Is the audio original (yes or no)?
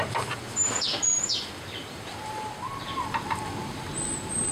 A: no